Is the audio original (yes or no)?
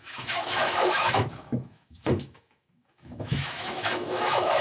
no